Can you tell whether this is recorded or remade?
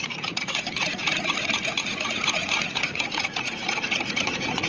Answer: remade